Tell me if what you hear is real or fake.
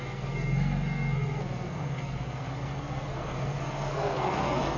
fake